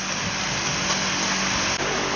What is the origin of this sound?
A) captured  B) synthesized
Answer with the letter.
A